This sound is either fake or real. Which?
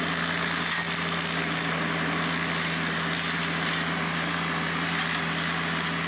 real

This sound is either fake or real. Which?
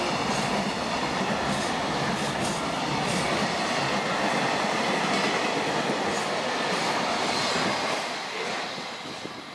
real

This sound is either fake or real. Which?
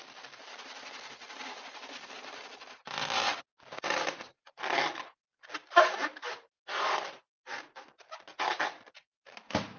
real